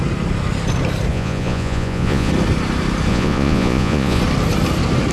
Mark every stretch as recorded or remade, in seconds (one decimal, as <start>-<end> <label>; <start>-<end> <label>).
0.0-1.1 recorded; 1.1-2.3 remade; 2.3-3.1 recorded; 3.1-4.2 remade; 4.2-5.1 recorded